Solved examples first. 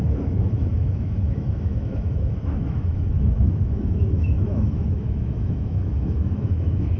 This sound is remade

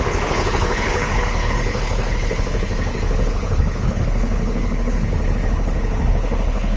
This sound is remade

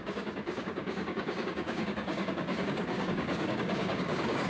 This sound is remade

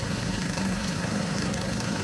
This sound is remade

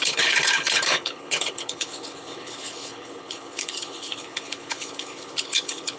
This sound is remade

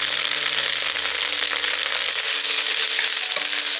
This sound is recorded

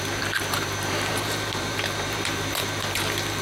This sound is remade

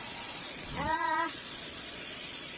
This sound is remade